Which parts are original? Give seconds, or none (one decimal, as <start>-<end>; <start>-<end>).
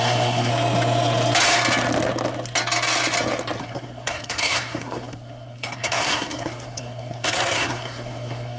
0.5-3.6